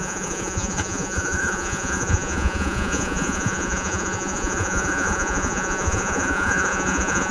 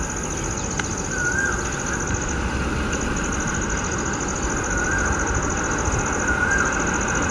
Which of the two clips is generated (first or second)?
first